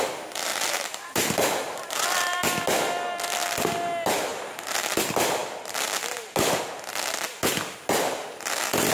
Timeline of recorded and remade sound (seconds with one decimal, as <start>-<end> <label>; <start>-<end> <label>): 0.0-0.5 recorded; 0.5-2.4 remade; 2.4-4.3 recorded; 4.3-5.0 remade; 5.0-8.9 recorded